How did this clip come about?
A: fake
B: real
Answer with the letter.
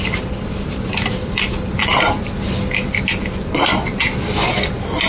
B